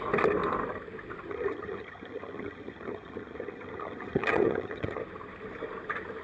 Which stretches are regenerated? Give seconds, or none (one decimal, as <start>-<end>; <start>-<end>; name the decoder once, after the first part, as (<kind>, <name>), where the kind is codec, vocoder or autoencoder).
1.3-5.0 (vocoder, HiFi-GAN)